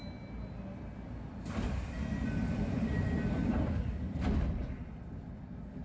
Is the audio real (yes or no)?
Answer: yes